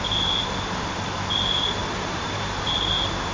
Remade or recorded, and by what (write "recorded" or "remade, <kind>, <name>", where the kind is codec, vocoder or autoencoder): remade, vocoder, BigVGAN v2